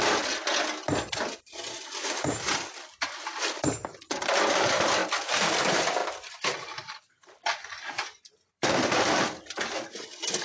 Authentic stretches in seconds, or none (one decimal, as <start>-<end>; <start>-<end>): 0.0-4.5; 6.0-7.0